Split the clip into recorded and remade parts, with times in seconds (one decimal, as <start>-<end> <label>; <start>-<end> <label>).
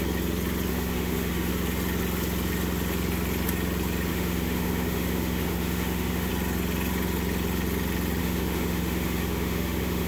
0.0-0.7 recorded; 0.7-1.5 remade; 1.5-4.1 recorded; 4.1-6.3 remade; 6.3-8.2 recorded; 8.2-10.1 remade